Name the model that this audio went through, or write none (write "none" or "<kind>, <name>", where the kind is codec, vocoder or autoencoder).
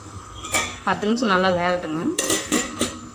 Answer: codec, SNAC